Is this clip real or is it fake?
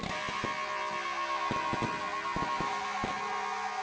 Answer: real